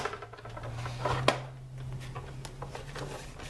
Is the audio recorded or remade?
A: recorded